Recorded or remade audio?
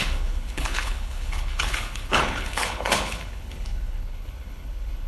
remade